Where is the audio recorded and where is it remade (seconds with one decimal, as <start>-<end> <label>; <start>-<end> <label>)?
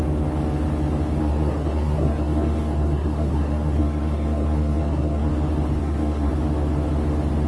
0.0-1.2 recorded; 1.2-5.3 remade; 5.3-5.8 recorded; 5.8-6.3 remade; 6.3-7.5 recorded